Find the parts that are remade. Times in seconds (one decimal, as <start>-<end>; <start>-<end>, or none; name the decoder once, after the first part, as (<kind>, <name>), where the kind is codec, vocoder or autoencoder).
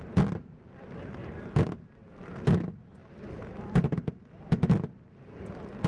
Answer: 1.2-1.9 (vocoder, BigVGAN v2); 3.0-4.1